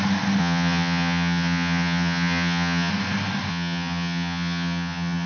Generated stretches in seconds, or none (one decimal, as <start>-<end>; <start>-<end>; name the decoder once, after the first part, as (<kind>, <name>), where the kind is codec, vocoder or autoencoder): 0.4-2.9 (vocoder, HiFi-GAN); 3.5-5.3